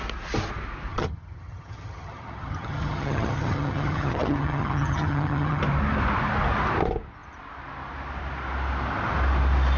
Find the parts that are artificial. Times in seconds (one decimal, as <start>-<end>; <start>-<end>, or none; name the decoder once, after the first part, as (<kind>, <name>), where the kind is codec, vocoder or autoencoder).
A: 0.9-5.6 (vocoder, HiFi-GAN)